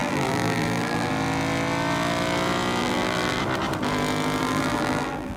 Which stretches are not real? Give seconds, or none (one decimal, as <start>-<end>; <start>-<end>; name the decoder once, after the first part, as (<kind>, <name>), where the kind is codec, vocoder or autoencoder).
0.0-1.1 (vocoder, BigVGAN v2); 2.8-3.4; 4.4-5.4